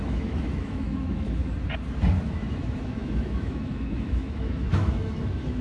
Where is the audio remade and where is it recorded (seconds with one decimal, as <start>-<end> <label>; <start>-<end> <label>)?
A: 0.0-1.4 remade; 1.4-2.2 recorded; 2.2-5.6 remade